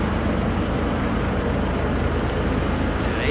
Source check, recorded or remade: recorded